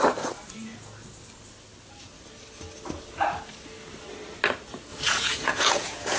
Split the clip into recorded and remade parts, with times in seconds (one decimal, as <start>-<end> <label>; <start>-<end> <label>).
0.0-4.9 recorded; 4.9-6.2 remade